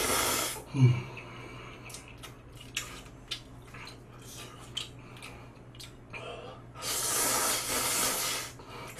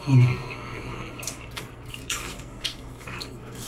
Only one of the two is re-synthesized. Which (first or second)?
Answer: second